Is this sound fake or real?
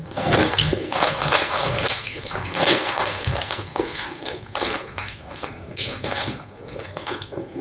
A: fake